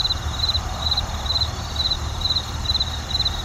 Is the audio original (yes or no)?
no